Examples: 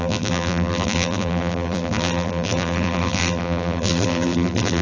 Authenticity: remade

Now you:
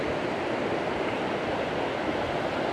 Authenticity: recorded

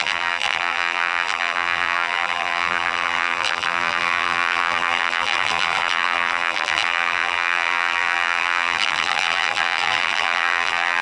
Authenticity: remade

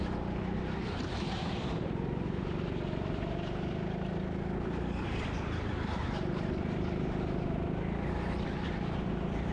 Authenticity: recorded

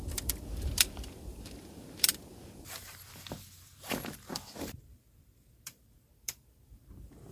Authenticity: remade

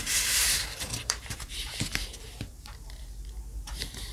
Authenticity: remade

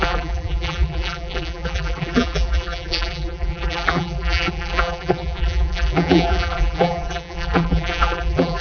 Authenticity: remade